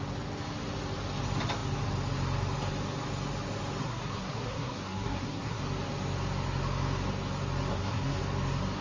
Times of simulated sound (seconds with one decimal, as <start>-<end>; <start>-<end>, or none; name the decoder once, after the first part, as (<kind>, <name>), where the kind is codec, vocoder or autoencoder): 3.8-5.6 (codec, SNAC); 7.7-8.2